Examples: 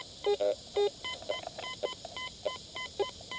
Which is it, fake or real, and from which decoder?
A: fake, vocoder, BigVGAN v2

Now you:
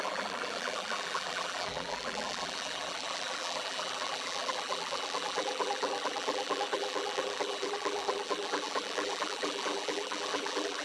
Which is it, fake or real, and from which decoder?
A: fake, vocoder, BigVGAN v2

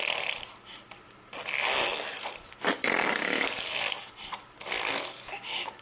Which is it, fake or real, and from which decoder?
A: real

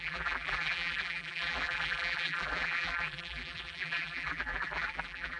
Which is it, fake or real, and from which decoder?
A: fake, vocoder, BigVGAN v2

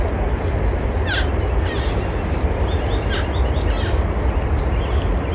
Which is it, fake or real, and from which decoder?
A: real